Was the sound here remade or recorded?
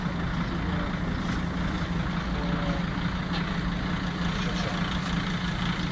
recorded